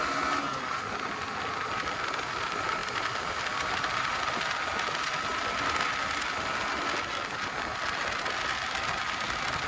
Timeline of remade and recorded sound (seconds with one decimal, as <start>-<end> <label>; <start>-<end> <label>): 0.0-9.7 recorded